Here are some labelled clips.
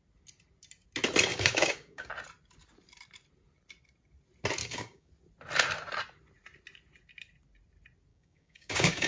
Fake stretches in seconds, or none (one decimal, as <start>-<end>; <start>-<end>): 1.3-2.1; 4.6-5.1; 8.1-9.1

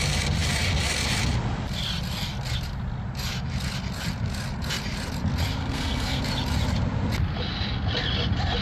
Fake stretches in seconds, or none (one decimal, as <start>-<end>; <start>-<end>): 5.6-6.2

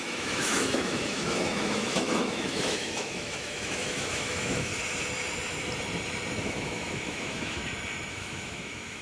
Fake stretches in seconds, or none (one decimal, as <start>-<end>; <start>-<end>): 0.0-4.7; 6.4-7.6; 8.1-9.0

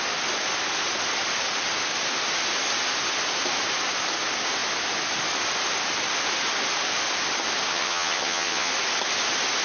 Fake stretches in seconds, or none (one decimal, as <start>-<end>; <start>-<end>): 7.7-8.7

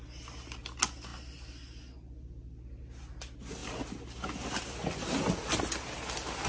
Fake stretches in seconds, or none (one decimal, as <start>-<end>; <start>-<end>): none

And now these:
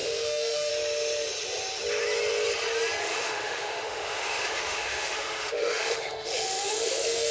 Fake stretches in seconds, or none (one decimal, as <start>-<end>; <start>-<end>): 0.0-0.7; 3.0-7.3

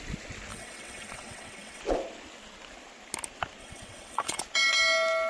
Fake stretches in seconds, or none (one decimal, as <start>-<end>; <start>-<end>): 0.5-1.8; 3.6-4.4